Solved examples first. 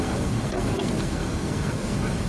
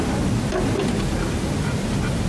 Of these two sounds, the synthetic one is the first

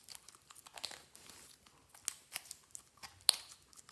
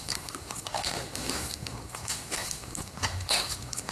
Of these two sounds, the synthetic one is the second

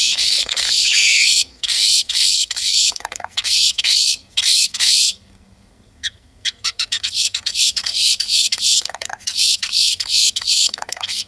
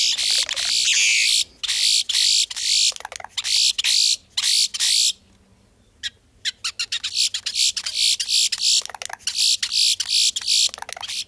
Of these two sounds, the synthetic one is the first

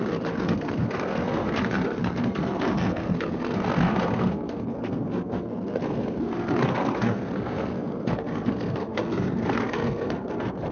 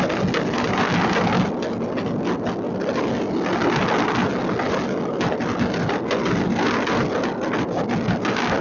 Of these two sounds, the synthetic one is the first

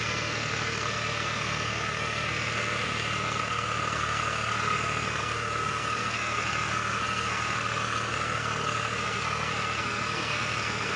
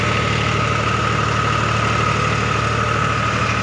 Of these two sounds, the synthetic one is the first